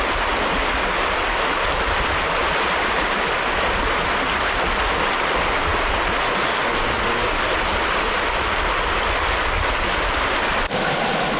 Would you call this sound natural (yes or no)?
yes